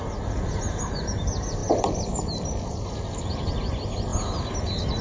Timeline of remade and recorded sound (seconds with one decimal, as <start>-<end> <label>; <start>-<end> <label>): 0.0-5.0 recorded